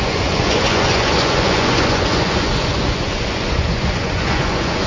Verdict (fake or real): fake